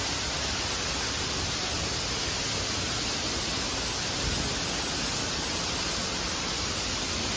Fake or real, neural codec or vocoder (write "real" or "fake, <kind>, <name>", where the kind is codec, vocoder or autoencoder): real